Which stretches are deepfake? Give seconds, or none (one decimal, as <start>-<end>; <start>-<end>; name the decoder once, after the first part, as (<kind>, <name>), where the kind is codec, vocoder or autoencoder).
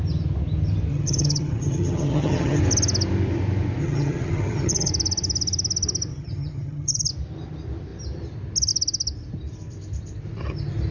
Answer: 0.9-2.6 (vocoder, HiFi-GAN); 3.8-4.9; 6.1-7.1